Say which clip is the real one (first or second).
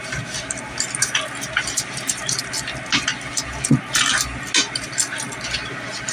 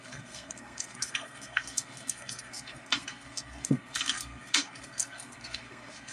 first